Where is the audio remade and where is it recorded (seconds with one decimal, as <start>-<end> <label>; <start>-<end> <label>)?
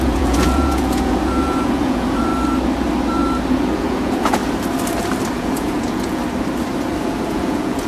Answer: 0.0-2.3 remade; 2.3-3.5 recorded; 3.5-4.4 remade; 4.4-5.3 recorded; 5.3-6.2 remade; 6.2-7.0 recorded; 7.0-7.9 remade